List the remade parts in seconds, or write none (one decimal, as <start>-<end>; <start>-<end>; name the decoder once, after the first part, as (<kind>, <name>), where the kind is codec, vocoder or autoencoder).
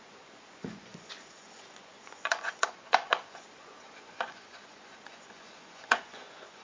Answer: 0.0-6.6 (vocoder, Vocos)